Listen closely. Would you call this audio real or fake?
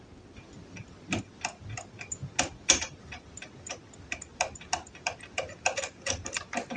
fake